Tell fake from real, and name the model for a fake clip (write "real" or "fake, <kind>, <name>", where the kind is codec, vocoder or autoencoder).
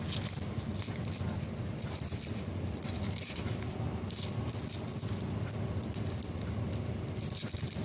fake, vocoder, BigVGAN v2